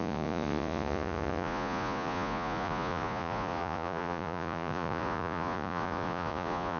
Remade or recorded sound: remade